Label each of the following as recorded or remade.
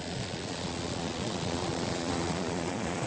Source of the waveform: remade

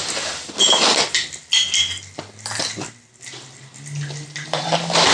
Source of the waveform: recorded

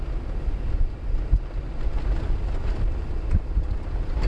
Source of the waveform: recorded